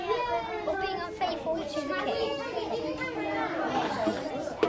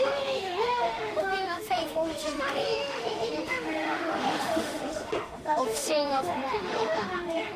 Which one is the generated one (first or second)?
second